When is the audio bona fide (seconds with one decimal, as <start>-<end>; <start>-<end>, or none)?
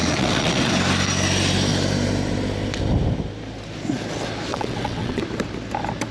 0.7-4.5; 5.2-6.1